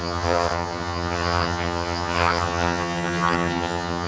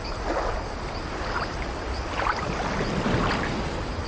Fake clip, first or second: first